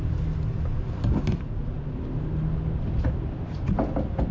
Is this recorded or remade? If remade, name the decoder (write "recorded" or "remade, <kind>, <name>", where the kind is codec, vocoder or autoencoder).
recorded